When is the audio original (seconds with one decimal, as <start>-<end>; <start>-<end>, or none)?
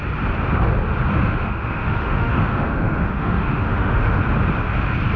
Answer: 0.0-1.1; 4.2-5.2